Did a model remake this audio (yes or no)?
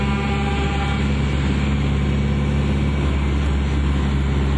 no